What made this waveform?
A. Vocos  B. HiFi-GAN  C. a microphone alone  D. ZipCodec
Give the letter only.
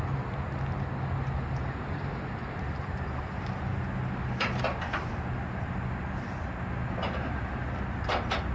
C